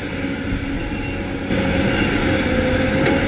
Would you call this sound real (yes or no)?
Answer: yes